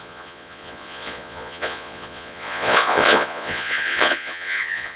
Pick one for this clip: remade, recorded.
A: remade